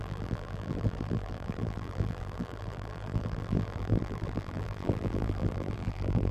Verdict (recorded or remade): remade